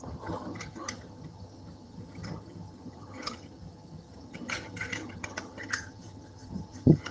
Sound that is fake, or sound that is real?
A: fake